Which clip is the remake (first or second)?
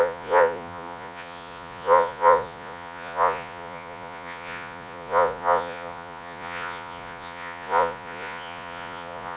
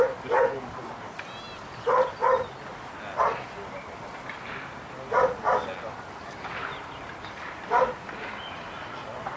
first